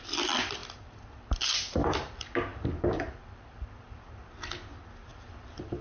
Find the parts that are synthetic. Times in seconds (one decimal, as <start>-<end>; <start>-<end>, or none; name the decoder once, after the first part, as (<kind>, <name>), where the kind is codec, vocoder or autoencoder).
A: 0.6-1.9 (vocoder, BigVGAN v2); 2.5-4.1; 5.1-5.8